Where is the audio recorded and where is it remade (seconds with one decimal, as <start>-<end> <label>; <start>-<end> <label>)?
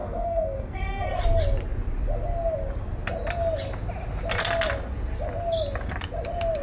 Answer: 0.0-1.1 remade; 1.1-6.6 recorded